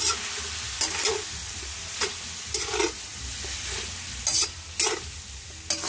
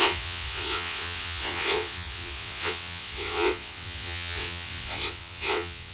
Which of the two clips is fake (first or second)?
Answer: second